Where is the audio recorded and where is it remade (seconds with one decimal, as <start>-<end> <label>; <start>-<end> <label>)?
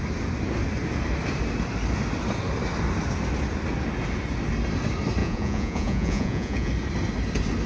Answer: 0.0-5.2 recorded; 5.2-6.7 remade; 6.7-7.7 recorded